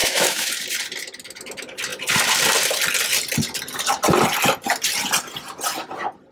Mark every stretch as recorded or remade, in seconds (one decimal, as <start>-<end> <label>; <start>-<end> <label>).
0.0-0.5 remade; 0.5-6.3 recorded